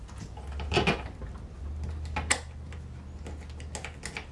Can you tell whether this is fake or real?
real